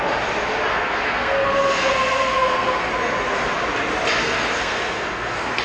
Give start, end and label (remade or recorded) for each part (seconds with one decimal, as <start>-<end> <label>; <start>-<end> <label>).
0.0-0.7 recorded; 0.7-2.9 remade; 2.9-4.2 recorded; 4.2-5.6 remade